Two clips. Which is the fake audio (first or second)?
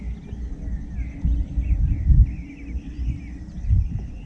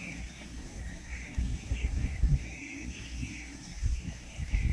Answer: second